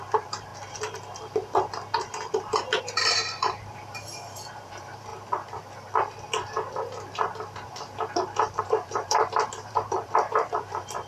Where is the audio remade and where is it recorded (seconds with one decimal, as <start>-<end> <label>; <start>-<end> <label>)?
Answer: 0.0-0.5 remade; 0.5-2.8 recorded; 2.8-5.1 remade; 5.1-8.6 recorded; 8.6-11.1 remade